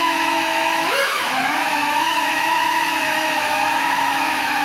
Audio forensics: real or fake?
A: fake